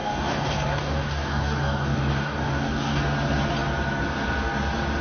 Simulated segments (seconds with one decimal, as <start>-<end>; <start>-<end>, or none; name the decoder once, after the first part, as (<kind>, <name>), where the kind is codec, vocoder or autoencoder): 0.0-3.0 (codec, DAC)